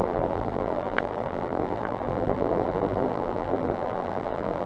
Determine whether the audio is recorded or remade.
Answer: remade